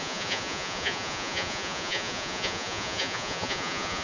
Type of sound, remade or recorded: remade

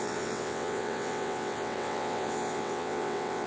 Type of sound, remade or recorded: remade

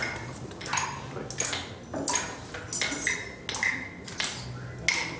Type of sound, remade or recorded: recorded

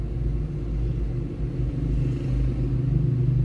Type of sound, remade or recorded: recorded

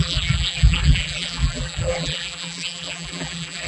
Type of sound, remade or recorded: remade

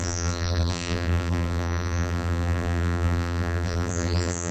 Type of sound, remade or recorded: remade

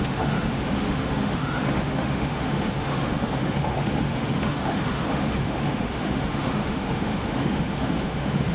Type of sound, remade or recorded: remade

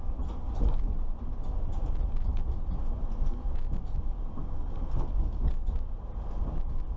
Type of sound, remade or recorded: recorded